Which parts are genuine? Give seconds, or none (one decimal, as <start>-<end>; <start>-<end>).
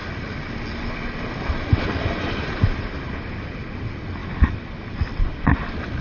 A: 0.0-2.8; 4.2-4.9